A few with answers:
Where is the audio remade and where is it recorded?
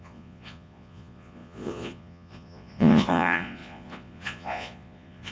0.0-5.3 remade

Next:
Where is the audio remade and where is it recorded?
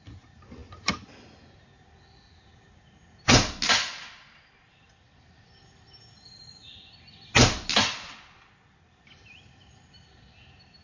0.0-10.8 recorded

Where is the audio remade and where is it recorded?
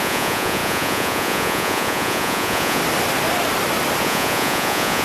0.0-2.8 remade; 2.8-4.0 recorded; 4.0-5.0 remade